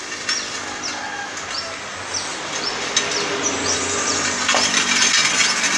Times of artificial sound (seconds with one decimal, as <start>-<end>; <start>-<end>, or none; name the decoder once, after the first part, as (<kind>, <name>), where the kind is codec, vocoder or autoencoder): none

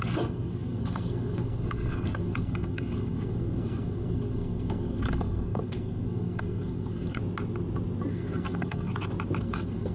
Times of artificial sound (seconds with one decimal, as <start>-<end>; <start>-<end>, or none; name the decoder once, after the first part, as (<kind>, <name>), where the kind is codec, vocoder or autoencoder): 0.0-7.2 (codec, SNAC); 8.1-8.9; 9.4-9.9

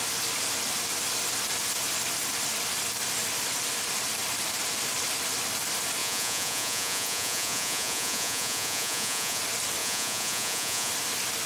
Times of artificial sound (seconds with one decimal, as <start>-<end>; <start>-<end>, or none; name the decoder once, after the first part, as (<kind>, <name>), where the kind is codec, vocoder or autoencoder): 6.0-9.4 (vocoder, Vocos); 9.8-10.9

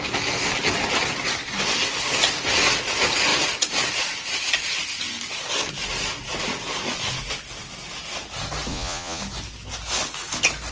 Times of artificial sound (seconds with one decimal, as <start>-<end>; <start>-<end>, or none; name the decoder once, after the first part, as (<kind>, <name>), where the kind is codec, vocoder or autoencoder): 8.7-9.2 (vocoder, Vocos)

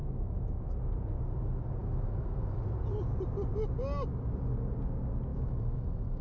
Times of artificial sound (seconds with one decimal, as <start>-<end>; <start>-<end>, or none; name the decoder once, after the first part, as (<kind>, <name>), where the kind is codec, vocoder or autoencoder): 0.0-0.7 (autoencoder, DAC-VAE); 1.8-2.6; 5.3-6.2

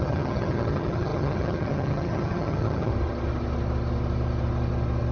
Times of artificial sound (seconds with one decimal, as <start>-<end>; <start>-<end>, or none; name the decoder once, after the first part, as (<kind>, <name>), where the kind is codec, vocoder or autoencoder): 0.0-2.9 (vocoder, HiFi-GAN)